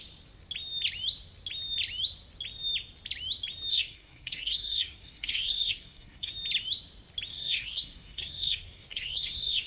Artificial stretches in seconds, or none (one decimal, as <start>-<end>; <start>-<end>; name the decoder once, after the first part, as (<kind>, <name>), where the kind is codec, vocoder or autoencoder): 3.7-6.3 (codec, SNAC); 7.3-9.7